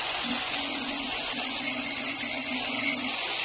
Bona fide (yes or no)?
no